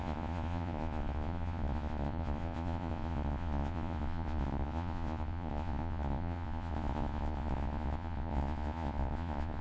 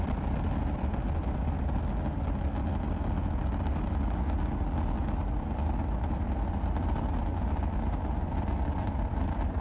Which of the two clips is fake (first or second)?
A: first